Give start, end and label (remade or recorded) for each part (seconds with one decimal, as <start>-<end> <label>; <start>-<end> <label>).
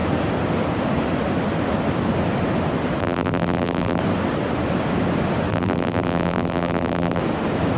0.0-3.0 recorded; 3.0-4.0 remade; 4.0-5.5 recorded; 5.5-7.2 remade; 7.2-7.8 recorded